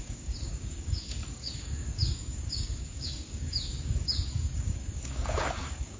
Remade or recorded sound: remade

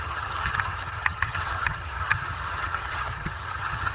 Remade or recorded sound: remade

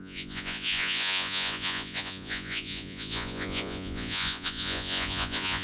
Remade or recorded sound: remade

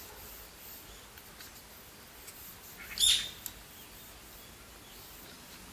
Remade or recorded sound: recorded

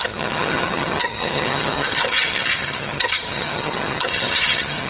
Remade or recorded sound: remade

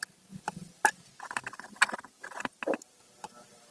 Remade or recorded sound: recorded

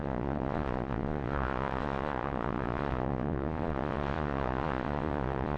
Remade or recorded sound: remade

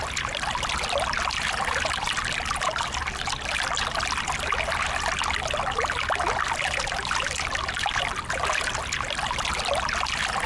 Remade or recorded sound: recorded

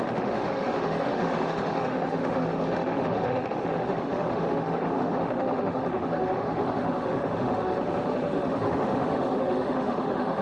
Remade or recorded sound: remade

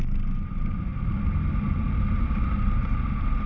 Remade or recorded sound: recorded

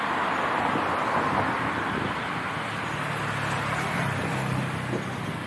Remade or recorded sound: recorded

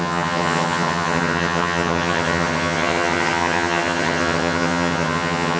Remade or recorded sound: remade